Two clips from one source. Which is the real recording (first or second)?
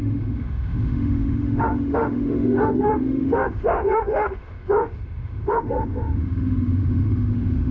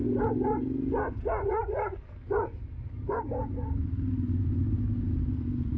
second